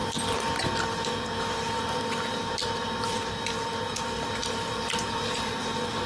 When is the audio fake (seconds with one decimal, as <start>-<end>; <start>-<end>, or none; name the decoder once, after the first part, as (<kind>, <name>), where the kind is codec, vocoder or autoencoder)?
1.8-6.1 (vocoder, BigVGAN v2)